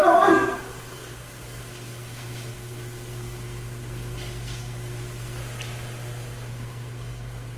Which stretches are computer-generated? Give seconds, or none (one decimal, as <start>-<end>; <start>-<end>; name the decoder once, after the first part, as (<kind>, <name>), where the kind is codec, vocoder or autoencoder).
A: 0.0-5.4 (codec, SNAC); 6.5-7.6